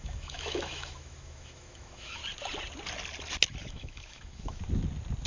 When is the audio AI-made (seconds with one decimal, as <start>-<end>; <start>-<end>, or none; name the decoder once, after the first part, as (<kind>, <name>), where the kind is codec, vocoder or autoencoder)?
0.0-2.2 (autoencoder, DAC-VAE); 3.6-4.6